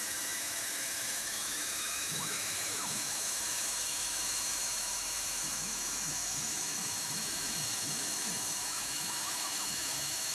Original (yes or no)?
no